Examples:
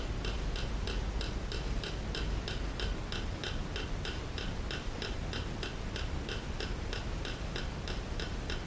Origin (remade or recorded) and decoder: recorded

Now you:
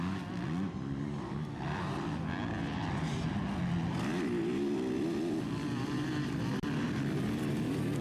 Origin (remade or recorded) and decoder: recorded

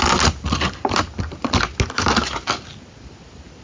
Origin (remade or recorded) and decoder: recorded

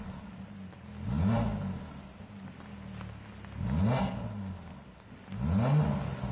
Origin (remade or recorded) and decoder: recorded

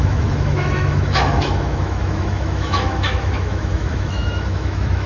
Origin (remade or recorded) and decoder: remade, autoencoder, DAC-VAE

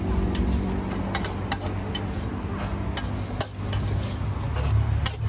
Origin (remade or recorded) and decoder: recorded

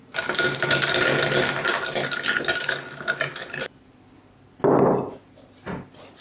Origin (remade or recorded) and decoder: recorded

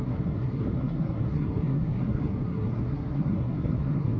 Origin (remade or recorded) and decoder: remade, codec, SNAC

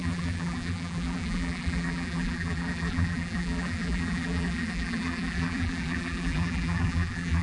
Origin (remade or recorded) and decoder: remade, vocoder, BigVGAN v2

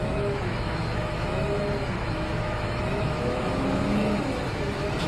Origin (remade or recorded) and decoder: remade, autoencoder, DAC-VAE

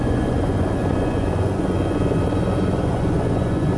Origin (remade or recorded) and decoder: remade, vocoder, Vocos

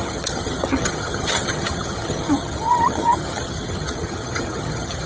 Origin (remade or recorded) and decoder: remade, vocoder, HiFi-GAN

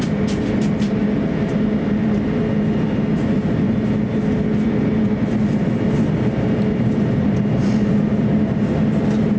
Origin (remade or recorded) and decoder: recorded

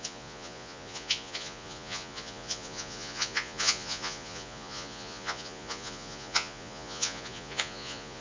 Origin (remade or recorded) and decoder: remade, vocoder, Vocos